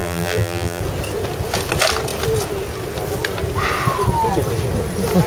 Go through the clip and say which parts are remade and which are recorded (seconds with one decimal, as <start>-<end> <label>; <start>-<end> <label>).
0.0-0.8 remade; 0.8-5.3 recorded